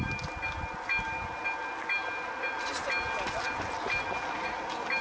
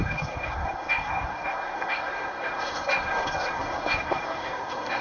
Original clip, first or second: first